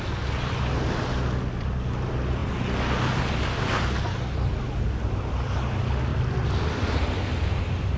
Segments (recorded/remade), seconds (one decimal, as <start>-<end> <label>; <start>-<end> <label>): 0.0-8.0 recorded

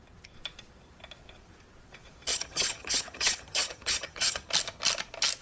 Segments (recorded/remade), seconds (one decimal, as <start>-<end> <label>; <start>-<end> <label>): 0.0-2.3 recorded; 2.3-4.5 remade; 4.5-5.4 recorded

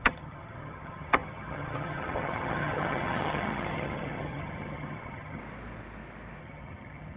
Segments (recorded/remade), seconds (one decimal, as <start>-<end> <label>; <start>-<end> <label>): 0.0-5.4 remade; 5.4-6.4 recorded; 6.4-7.2 remade